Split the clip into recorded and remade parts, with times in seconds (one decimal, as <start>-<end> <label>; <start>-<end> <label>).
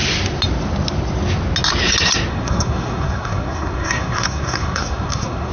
0.0-2.3 recorded; 2.3-5.5 remade